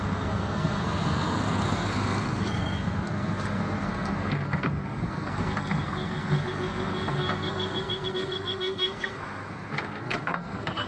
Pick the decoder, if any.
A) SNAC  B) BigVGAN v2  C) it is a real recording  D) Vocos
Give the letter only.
A